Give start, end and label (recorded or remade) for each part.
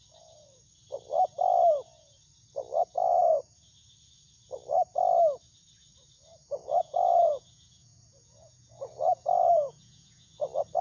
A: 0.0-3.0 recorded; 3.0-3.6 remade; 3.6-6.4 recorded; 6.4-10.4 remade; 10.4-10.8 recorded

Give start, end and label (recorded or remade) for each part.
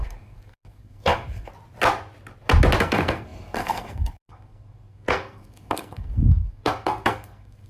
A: 0.0-1.5 remade; 1.5-2.8 recorded; 2.8-7.7 remade